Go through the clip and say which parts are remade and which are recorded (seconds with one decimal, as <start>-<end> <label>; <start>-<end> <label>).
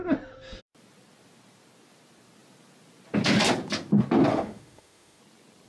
0.0-4.3 recorded; 4.3-5.2 remade; 5.2-5.7 recorded